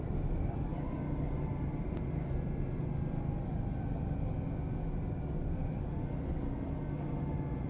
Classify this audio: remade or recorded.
recorded